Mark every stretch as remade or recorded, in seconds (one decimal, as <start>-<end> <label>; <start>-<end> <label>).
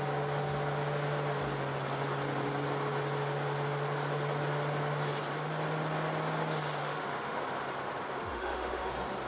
0.0-6.8 recorded; 6.8-7.4 remade; 7.4-8.2 recorded; 8.2-8.9 remade; 8.9-9.3 recorded